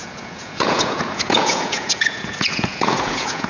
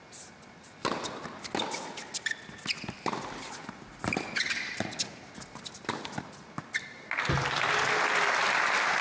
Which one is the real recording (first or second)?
second